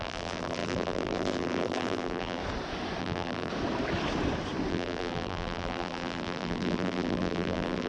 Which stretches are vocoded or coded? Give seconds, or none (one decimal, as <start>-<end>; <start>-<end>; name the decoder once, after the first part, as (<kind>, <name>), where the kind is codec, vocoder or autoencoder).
0.0-2.4 (vocoder, BigVGAN v2); 3.0-3.5; 4.7-7.9